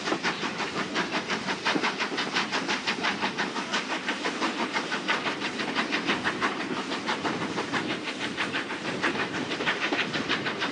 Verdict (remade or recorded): remade